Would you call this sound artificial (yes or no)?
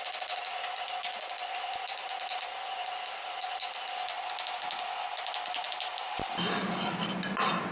no